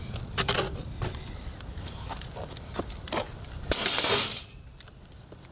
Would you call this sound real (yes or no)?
no